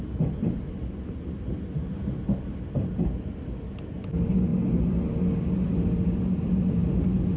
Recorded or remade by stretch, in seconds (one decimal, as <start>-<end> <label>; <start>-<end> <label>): 0.0-7.4 recorded